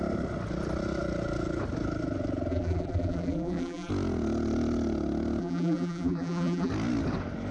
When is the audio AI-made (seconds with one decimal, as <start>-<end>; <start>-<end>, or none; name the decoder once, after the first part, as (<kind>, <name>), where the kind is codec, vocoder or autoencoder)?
2.5-3.9 (vocoder, BigVGAN v2); 5.4-6.7